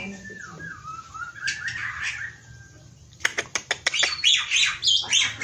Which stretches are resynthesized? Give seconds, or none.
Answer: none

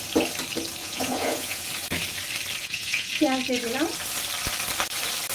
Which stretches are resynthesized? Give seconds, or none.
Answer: 0.8-1.7 (vocoder, Vocos); 2.6-3.1

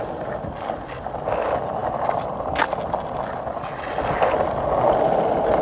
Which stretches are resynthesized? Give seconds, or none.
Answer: none